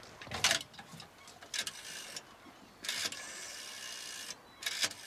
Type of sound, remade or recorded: recorded